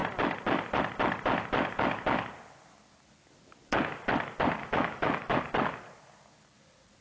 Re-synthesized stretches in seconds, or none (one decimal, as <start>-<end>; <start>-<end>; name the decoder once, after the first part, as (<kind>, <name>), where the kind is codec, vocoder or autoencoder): 4.6-5.4 (autoencoder, DAC-VAE)